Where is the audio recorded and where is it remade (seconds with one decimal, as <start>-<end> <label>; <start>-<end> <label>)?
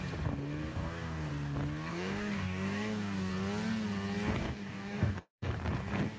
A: 0.0-0.7 recorded; 0.7-1.3 remade; 1.3-1.9 recorded; 1.9-3.3 remade; 3.3-4.4 recorded; 4.4-5.5 remade; 5.5-6.2 recorded